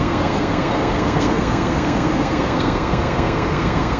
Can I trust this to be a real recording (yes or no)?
no